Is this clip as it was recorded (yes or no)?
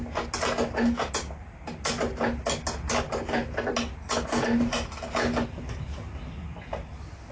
yes